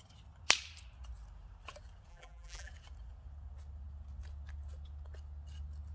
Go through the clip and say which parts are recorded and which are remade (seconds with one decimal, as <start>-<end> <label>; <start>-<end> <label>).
0.0-2.1 recorded; 2.1-2.7 remade; 2.7-5.9 recorded